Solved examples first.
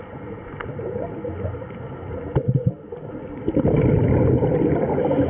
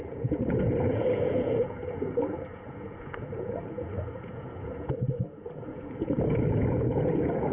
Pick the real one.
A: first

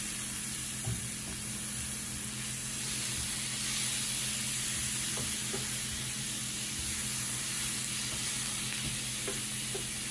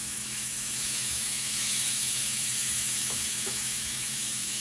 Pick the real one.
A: first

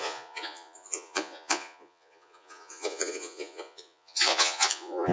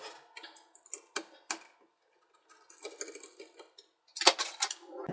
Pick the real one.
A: second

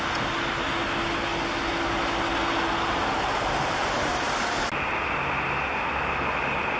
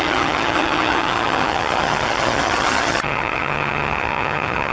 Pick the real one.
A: first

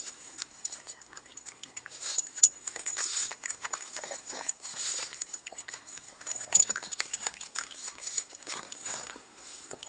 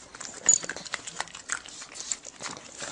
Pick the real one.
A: second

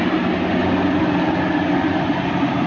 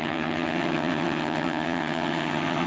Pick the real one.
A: first